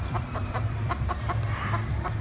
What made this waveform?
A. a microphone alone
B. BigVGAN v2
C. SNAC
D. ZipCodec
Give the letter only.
B